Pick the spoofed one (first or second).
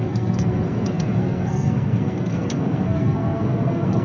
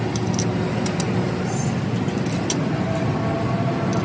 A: first